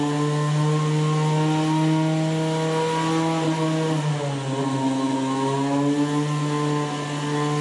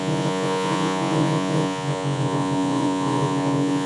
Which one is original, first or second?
first